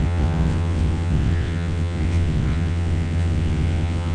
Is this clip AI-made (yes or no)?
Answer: yes